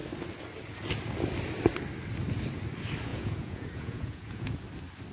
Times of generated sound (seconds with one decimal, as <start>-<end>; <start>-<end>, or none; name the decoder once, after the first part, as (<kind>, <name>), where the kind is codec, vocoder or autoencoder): 3.1-4.6 (vocoder, Vocos)